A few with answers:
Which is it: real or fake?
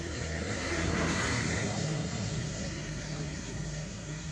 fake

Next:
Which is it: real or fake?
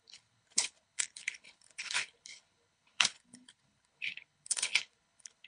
fake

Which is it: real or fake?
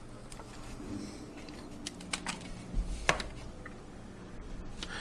real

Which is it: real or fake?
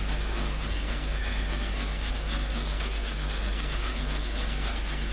fake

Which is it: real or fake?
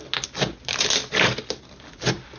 real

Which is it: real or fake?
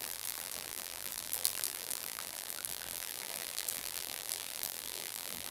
fake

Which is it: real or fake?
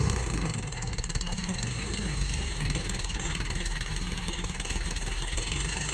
fake